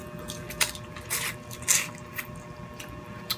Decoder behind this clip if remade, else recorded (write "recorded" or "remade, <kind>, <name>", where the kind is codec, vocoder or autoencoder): recorded